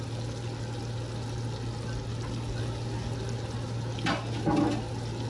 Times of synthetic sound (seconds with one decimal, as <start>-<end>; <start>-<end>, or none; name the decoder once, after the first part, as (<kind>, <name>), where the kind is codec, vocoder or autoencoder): none